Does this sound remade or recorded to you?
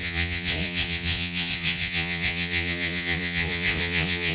remade